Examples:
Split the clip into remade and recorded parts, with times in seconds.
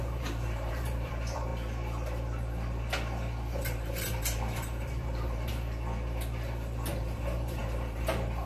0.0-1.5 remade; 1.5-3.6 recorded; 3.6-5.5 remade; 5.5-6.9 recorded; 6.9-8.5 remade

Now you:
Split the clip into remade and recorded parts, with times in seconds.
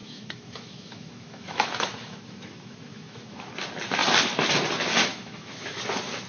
0.0-3.5 remade; 3.5-5.1 recorded; 5.1-5.8 remade; 5.8-6.3 recorded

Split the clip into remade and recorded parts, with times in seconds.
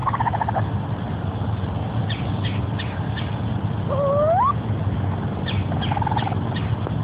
0.0-7.0 recorded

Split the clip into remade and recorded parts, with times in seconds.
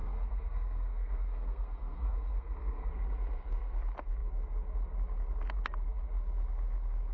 0.0-2.9 remade; 2.9-7.1 recorded